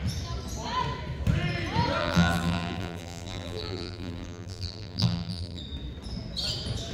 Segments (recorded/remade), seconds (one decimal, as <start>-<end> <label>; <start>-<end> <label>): 0.0-2.0 recorded; 2.0-5.6 remade; 5.6-6.9 recorded